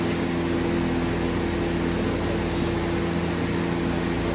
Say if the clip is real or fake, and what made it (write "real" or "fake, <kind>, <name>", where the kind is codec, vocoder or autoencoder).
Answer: real